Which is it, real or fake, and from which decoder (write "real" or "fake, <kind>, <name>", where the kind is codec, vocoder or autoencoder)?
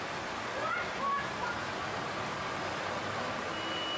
real